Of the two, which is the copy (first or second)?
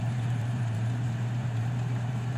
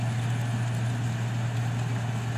first